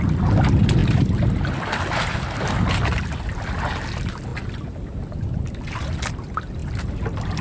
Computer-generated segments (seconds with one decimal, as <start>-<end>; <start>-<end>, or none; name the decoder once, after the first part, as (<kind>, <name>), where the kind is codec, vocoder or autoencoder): 6.6-7.4 (vocoder, BigVGAN v2)